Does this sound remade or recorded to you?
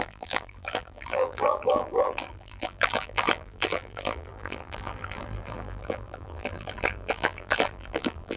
remade